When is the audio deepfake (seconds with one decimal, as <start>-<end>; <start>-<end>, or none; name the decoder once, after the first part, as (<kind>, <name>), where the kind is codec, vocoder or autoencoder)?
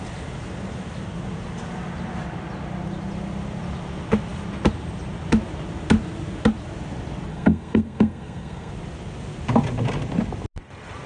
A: 7.3-8.7 (codec, SNAC)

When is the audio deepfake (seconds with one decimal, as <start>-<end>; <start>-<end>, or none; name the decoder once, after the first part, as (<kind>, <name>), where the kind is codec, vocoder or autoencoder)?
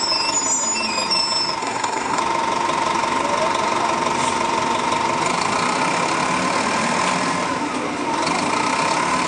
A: 1.6-2.2 (codec, SNAC)